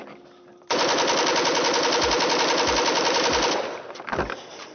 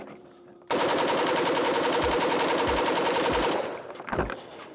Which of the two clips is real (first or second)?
first